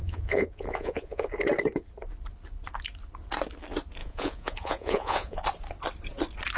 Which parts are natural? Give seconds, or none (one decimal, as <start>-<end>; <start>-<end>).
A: 1.3-4.0; 5.4-6.6